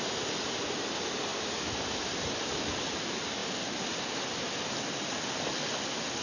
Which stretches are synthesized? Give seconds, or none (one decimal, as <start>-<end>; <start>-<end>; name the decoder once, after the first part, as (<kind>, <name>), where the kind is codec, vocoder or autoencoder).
none